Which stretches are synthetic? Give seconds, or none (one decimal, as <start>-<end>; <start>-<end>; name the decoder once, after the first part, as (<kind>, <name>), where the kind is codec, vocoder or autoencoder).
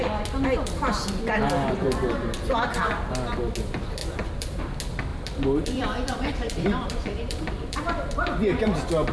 4.0-4.6 (vocoder, BigVGAN v2); 5.1-8.1